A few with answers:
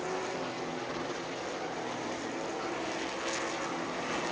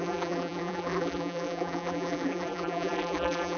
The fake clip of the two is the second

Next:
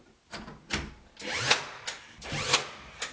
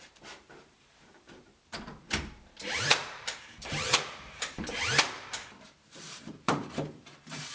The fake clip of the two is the second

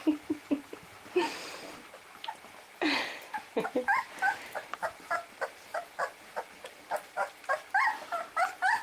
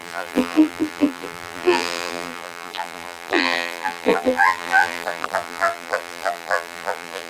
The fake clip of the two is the second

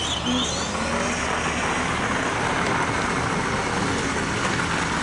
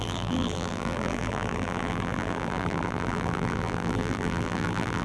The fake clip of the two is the second